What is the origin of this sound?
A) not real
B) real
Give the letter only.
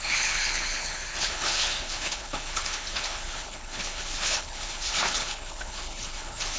A